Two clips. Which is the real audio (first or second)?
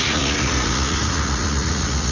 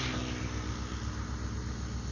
second